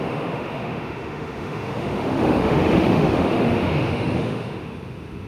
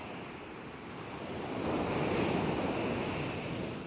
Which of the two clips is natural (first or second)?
second